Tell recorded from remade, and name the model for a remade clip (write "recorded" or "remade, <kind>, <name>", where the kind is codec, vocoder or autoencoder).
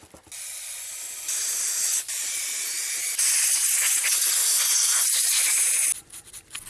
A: recorded